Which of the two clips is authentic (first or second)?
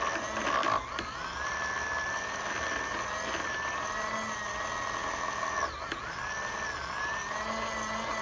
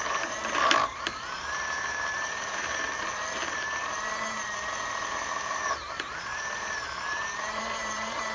first